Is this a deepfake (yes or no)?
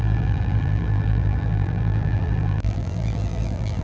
yes